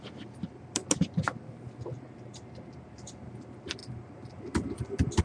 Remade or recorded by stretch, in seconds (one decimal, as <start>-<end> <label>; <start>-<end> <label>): 0.0-0.8 remade; 0.8-3.1 recorded; 3.1-5.2 remade